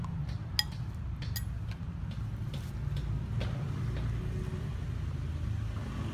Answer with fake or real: real